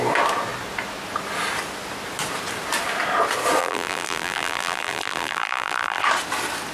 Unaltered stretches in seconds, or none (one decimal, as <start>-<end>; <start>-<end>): 0.0-3.6; 6.0-6.7